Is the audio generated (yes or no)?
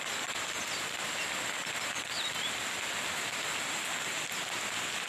no